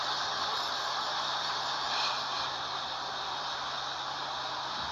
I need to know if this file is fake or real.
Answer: real